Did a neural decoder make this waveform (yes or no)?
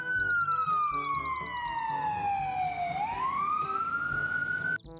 no